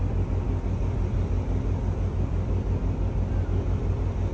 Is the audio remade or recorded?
recorded